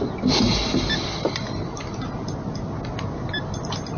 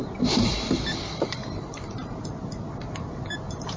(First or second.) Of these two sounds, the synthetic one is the second